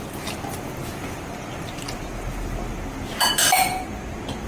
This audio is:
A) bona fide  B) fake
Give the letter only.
A